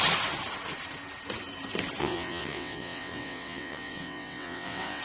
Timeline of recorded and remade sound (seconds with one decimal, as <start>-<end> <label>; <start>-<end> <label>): 0.0-2.0 recorded; 2.0-5.0 remade